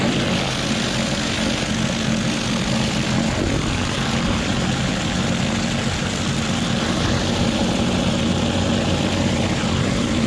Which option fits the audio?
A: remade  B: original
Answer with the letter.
B